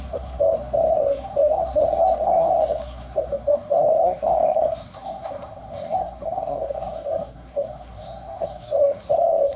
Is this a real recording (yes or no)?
no